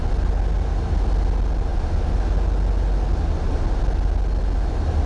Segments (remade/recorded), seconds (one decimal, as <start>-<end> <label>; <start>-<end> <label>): 0.0-5.1 recorded